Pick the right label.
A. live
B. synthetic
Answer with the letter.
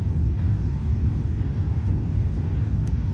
B